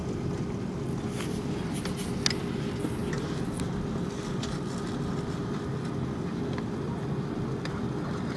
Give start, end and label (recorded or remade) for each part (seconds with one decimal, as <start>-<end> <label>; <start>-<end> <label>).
0.0-8.4 recorded